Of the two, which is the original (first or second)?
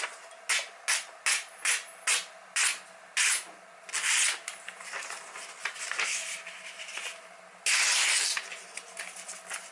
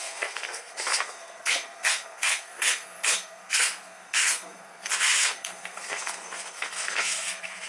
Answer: first